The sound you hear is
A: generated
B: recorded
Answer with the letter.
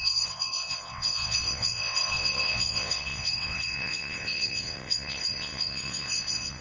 A